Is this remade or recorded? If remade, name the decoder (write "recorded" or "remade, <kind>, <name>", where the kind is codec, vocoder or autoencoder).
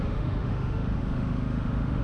remade, autoencoder, DAC-VAE